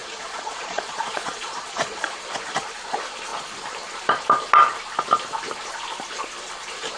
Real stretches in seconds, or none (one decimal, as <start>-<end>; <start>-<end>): 2.0-7.0